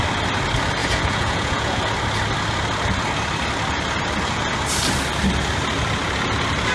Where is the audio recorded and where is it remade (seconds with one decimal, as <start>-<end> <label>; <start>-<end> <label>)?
0.0-0.8 recorded; 0.8-1.8 remade; 1.8-6.7 recorded